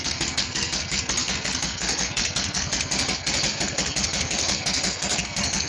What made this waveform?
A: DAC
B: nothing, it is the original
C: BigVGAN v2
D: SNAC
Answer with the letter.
D